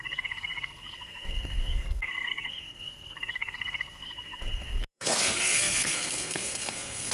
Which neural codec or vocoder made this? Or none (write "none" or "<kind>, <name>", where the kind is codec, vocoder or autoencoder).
codec, SNAC